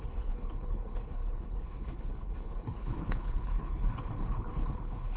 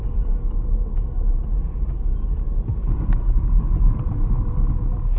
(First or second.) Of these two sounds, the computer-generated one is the first